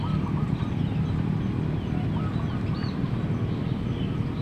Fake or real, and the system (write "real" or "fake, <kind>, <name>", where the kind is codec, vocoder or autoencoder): real